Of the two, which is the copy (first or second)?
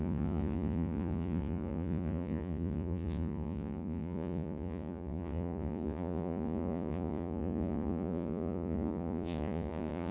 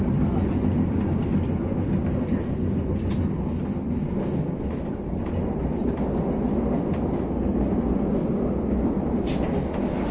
first